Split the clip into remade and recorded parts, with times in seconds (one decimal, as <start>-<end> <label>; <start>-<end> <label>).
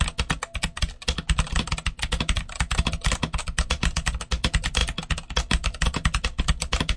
0.0-7.0 recorded